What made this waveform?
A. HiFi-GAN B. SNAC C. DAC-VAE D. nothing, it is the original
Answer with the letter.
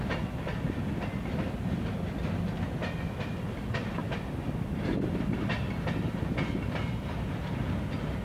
D